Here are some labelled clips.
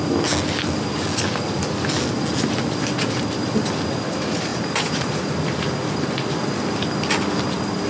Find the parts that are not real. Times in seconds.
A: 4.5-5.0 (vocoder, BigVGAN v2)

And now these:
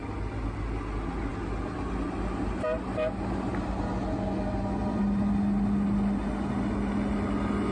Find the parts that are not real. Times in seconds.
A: none

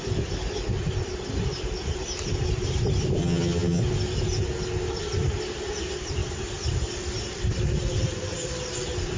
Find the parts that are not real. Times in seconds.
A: 3.2-3.8 (vocoder, HiFi-GAN)

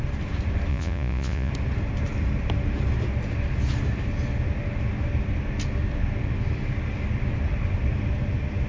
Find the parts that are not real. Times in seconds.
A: 0.7-1.5 (vocoder, Vocos)